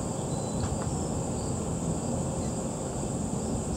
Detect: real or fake real